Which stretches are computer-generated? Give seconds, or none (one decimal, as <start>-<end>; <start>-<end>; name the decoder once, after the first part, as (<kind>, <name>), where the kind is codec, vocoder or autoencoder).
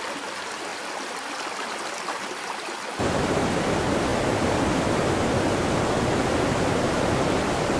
none